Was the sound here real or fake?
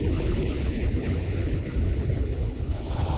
fake